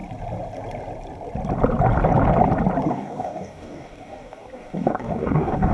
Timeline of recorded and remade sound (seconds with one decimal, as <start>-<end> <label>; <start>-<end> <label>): 0.0-2.9 recorded; 2.9-5.7 remade